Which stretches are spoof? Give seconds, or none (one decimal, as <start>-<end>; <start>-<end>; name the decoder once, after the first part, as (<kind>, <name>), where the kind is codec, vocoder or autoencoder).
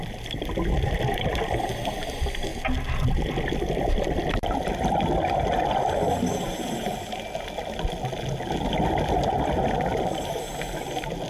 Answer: none